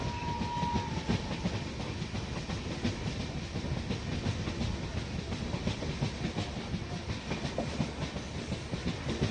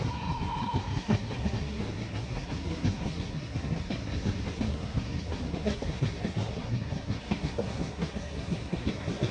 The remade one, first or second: second